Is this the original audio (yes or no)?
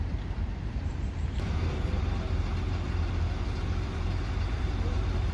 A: no